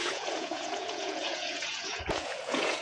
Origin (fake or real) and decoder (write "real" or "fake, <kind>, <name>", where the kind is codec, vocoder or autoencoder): fake, vocoder, Vocos